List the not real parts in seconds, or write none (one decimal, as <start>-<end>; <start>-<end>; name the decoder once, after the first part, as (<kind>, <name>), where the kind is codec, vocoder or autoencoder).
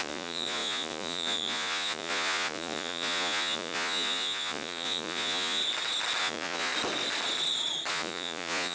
0.0-5.6 (vocoder, Vocos); 6.2-6.7; 7.9-8.7